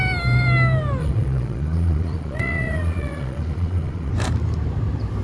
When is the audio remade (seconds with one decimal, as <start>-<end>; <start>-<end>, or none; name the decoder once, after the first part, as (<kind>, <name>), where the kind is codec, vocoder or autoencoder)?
1.0-4.1 (vocoder, Vocos)